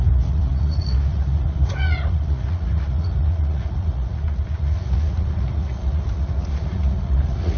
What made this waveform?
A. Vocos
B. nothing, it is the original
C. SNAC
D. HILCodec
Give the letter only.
A